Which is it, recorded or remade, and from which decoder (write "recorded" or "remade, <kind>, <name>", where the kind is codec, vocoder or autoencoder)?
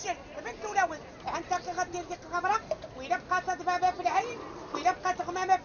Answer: recorded